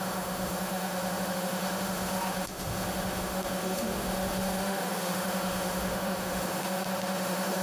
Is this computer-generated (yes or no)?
yes